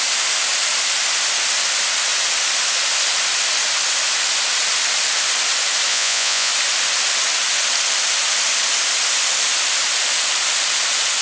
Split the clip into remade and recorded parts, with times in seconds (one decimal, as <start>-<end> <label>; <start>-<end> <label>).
0.0-5.9 recorded; 5.9-6.5 remade; 6.5-11.2 recorded